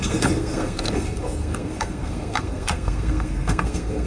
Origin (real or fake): fake